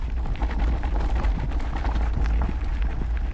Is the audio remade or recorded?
recorded